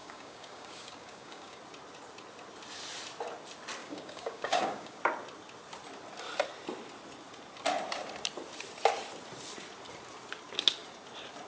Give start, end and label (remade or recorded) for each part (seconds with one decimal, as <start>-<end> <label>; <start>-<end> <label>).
0.0-1.6 remade; 1.6-3.8 recorded; 3.8-5.0 remade; 5.0-11.5 recorded